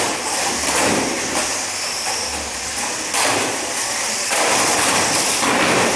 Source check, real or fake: real